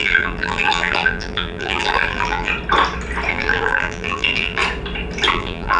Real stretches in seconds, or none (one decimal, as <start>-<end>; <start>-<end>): 2.5-3.3; 4.6-5.3